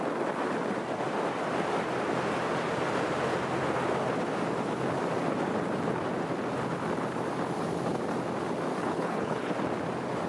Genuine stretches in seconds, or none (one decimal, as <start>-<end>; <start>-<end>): 0.0-8.8; 9.5-10.3